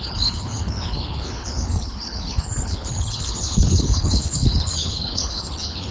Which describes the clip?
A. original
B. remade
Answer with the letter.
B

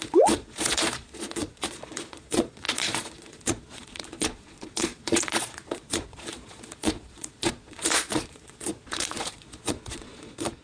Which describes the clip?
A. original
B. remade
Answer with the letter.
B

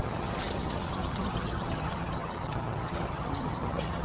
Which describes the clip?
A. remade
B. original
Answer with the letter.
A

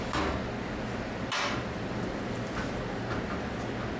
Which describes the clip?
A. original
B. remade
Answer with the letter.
A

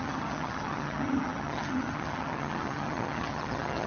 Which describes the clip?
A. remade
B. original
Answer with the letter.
A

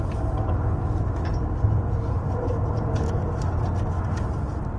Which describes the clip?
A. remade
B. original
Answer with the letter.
B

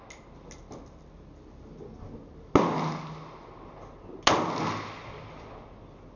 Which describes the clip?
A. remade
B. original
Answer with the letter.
B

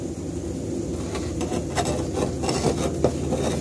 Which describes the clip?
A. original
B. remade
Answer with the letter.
A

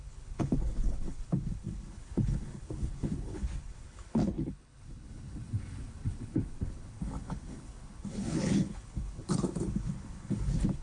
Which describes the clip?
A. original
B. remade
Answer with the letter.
B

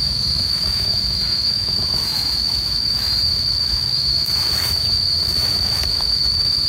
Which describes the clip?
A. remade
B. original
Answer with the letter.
A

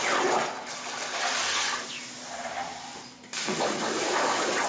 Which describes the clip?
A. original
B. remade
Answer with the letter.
A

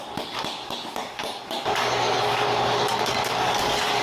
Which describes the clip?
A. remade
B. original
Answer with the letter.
A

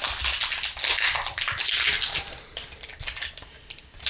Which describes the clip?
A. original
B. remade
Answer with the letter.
A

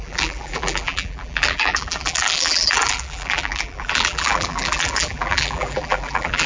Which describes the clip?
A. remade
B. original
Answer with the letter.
A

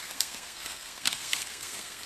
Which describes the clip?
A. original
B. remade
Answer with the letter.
B